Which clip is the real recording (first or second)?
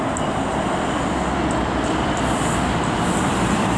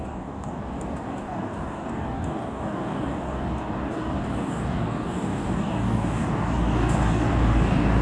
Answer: first